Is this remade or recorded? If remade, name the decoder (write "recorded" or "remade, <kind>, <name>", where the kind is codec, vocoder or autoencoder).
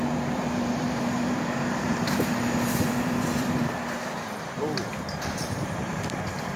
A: remade, vocoder, BigVGAN v2